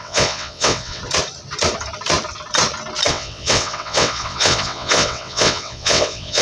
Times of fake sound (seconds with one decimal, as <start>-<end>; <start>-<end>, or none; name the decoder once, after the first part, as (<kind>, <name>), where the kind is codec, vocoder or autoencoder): 0.0-1.0 (vocoder, WaveNeXt); 3.1-6.4